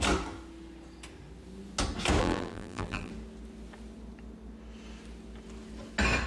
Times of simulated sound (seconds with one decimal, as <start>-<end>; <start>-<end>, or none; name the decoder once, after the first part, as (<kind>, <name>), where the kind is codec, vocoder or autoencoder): 2.2-3.1 (vocoder, BigVGAN v2)